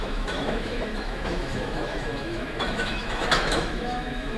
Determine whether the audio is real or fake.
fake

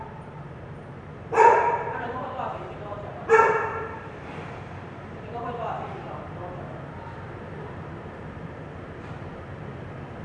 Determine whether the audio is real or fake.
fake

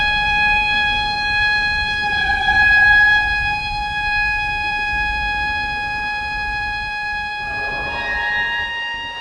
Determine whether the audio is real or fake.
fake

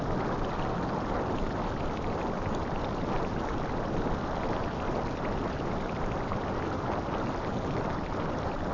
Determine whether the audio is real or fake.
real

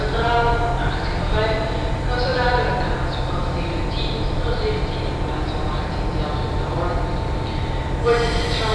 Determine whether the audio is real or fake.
real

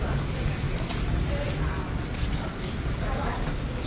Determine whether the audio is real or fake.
real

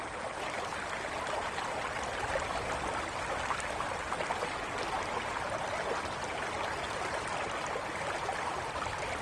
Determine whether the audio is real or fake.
real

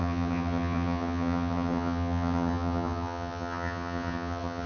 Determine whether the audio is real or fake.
fake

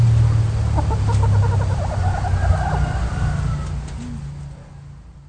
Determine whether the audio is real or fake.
real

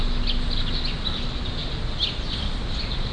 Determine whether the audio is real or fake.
real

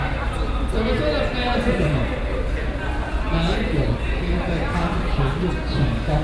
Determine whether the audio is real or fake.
real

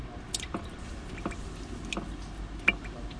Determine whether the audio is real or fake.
real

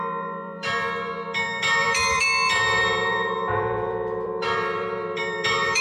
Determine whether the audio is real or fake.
fake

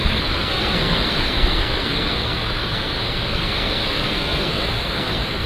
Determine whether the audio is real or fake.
fake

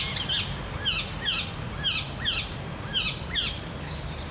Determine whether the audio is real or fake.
real